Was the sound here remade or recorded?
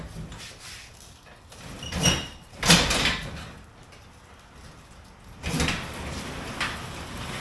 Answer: recorded